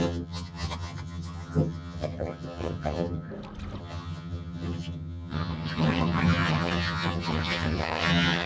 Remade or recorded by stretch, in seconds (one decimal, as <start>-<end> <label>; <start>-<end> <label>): 0.0-3.3 remade; 3.3-3.8 recorded; 3.8-8.5 remade